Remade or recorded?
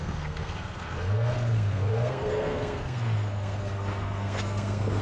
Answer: remade